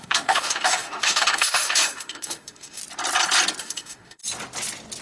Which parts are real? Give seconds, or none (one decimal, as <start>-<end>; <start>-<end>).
2.8-3.6; 4.2-5.0